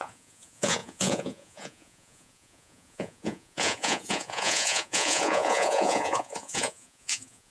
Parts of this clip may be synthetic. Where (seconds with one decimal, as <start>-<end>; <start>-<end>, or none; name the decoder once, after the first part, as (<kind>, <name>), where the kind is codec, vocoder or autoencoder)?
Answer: 0.0-7.5 (vocoder, Vocos)